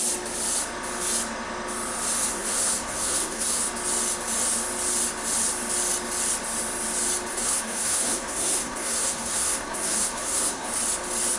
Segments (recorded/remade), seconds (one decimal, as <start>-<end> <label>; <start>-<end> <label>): 0.0-2.3 recorded; 2.3-3.6 remade; 3.6-7.3 recorded; 7.3-10.7 remade; 10.7-11.4 recorded